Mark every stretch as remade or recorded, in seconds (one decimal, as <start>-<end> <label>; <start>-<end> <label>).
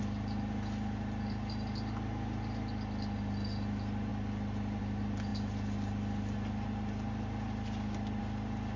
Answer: 0.0-8.8 recorded